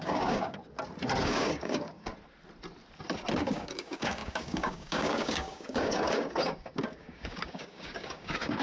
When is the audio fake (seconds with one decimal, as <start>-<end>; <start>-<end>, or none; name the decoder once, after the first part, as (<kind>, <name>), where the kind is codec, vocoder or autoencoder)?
0.0-0.6 (codec, DAC); 1.2-2.1; 3.4-8.6